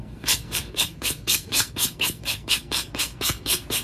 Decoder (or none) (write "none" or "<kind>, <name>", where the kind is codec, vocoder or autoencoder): codec, SNAC